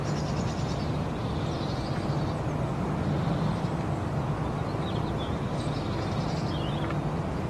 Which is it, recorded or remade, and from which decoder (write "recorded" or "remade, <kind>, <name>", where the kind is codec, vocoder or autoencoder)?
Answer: recorded